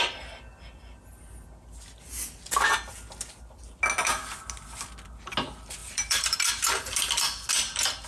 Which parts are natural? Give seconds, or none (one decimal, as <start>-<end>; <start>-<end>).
0.0-5.8; 6.5-8.1